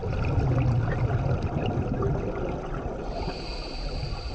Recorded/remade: recorded